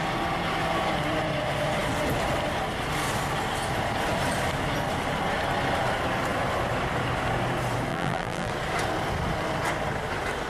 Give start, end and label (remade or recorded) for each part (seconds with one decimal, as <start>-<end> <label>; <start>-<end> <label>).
0.0-7.9 recorded; 7.9-8.5 remade; 8.5-10.5 recorded